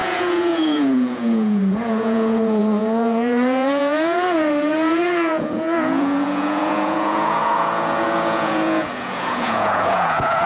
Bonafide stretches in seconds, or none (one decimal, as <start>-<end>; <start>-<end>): none